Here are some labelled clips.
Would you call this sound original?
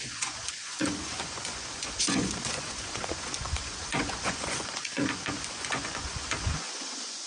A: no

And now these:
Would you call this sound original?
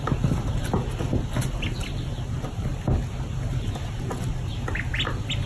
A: yes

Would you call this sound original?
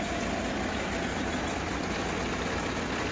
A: yes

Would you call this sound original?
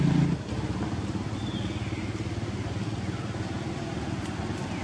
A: yes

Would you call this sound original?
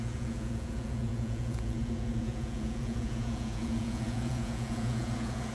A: no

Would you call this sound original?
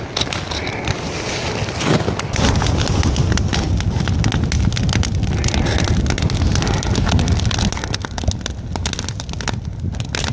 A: yes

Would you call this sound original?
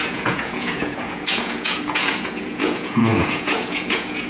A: no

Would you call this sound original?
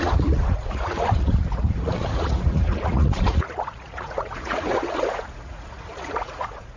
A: no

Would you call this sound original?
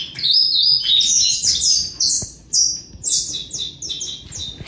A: yes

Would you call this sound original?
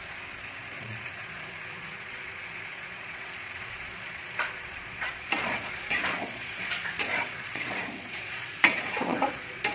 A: no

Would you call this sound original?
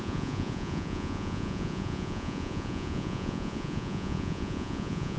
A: no